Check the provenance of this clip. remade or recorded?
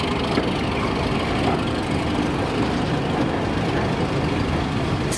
recorded